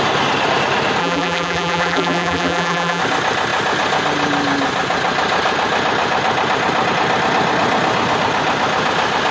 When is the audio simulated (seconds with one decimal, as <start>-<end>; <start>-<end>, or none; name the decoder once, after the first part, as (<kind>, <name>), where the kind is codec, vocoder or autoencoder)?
1.0-3.0 (vocoder, BigVGAN v2)